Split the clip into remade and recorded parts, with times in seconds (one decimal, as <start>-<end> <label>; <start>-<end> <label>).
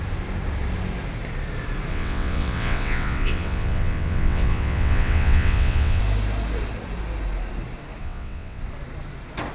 0.0-1.9 recorded; 1.9-6.0 remade; 6.0-8.0 recorded; 8.0-8.6 remade; 8.6-9.5 recorded